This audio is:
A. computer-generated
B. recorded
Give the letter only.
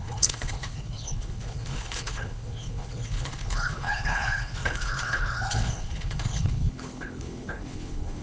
A